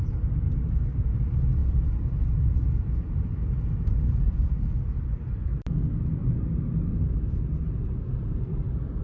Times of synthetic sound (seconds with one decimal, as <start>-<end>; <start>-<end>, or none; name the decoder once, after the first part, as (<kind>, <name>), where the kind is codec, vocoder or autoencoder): 6.2-7.2 (vocoder, BigVGAN v2)